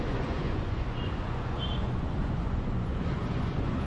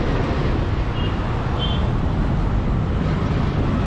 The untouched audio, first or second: second